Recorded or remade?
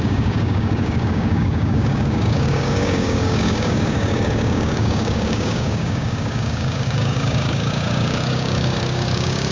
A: remade